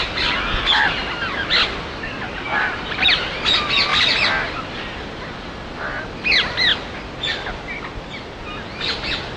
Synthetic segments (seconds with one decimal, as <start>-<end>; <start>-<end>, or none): 2.5-3.1; 3.9-4.6